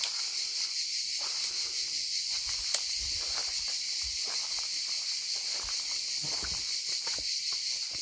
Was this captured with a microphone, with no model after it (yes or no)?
no